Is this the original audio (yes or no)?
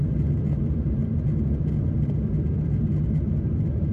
yes